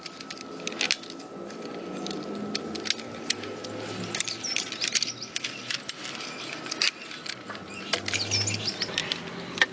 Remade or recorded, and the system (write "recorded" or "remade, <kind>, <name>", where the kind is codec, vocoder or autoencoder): recorded